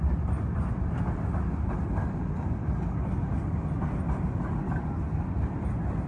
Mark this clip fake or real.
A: real